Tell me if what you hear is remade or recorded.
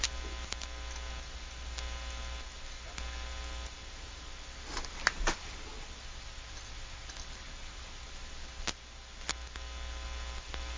recorded